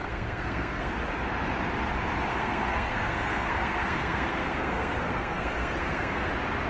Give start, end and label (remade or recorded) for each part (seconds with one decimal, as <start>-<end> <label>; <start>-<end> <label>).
0.0-0.9 remade; 0.9-2.3 recorded; 2.3-6.3 remade; 6.3-6.7 recorded